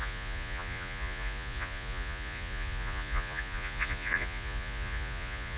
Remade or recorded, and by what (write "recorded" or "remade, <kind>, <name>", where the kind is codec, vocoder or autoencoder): remade, vocoder, Vocos